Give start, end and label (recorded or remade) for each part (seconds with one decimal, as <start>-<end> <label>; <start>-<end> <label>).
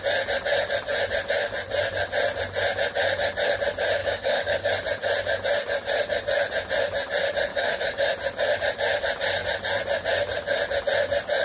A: 0.0-4.0 recorded; 4.0-4.7 remade; 4.7-7.5 recorded; 7.5-8.1 remade; 8.1-11.4 recorded